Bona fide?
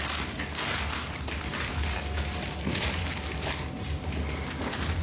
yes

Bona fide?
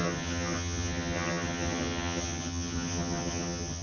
no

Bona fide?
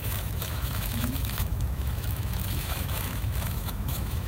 no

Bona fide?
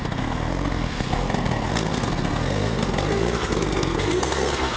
no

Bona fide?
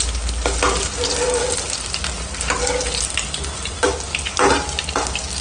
yes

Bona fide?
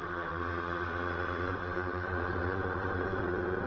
no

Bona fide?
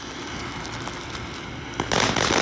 yes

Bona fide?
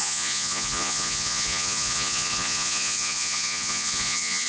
no